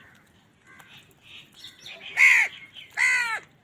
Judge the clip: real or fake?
real